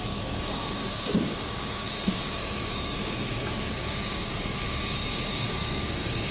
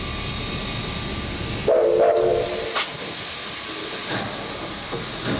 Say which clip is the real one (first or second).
second